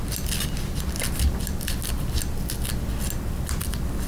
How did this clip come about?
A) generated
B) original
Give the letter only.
B